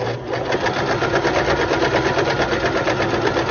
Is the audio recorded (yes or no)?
yes